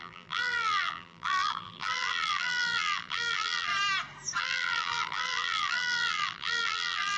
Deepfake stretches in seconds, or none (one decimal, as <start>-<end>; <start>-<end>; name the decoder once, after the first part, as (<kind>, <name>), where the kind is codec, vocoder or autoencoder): 0.0-3.7 (vocoder, BigVGAN v2); 4.4-7.2